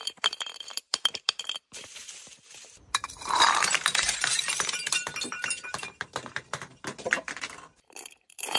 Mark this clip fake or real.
fake